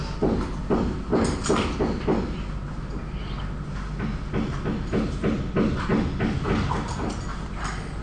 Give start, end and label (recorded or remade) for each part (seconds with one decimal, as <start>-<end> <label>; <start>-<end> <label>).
0.0-8.0 recorded